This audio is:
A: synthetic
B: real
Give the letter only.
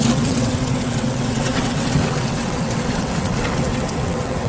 A